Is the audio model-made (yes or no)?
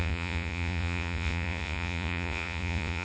yes